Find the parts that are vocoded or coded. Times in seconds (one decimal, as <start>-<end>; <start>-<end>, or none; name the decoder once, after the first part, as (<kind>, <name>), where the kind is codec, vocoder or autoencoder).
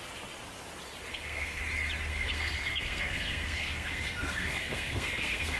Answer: 1.1-1.6 (codec, SNAC); 2.1-5.6